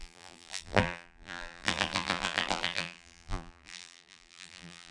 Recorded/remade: remade